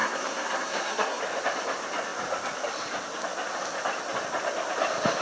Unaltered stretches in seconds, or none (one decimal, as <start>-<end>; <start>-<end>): 1.2-5.2